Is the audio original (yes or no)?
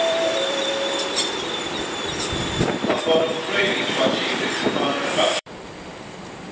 no